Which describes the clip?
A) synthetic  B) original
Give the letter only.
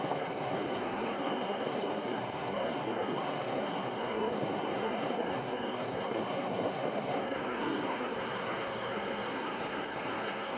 A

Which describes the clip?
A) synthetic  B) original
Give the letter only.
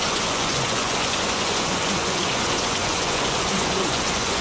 A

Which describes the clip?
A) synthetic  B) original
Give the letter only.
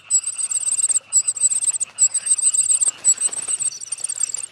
B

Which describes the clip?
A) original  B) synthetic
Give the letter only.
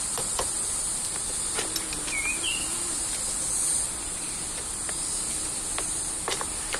A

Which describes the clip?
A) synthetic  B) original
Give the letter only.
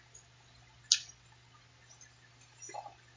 B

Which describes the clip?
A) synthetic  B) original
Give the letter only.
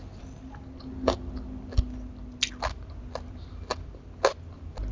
B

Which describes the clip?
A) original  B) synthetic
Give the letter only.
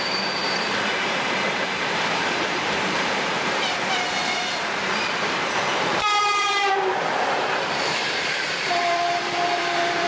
B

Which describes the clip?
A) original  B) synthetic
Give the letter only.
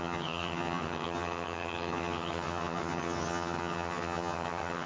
B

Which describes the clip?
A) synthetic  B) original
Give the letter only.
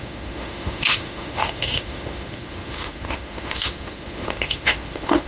A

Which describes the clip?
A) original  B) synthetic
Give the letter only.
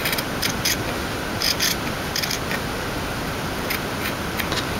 B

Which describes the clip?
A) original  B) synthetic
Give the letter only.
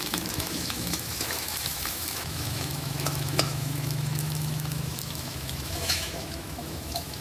B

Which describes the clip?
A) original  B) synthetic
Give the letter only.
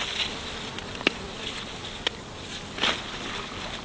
A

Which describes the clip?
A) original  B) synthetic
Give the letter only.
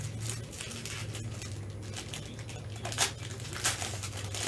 A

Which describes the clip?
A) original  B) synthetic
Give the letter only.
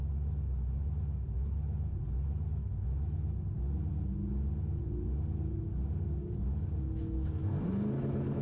A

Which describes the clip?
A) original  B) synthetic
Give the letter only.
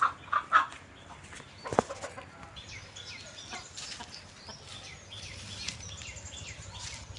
A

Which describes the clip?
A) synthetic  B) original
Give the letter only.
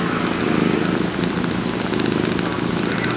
B